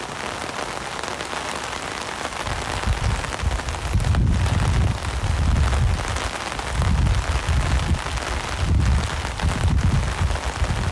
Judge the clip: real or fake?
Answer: real